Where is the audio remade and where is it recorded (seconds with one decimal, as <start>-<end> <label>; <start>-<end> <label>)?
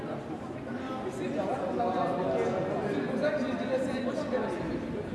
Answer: 0.0-5.1 recorded